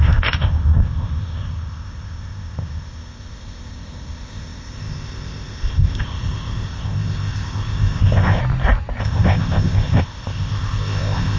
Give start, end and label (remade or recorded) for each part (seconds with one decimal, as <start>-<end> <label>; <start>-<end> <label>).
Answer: 0.0-8.4 remade; 8.4-9.0 recorded; 9.0-11.4 remade